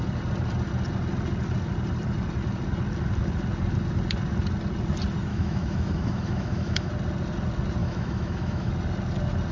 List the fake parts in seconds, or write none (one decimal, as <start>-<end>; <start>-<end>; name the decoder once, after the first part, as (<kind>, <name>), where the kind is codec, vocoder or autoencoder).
5.3-6.9 (autoencoder, DAC-VAE); 7.8-8.7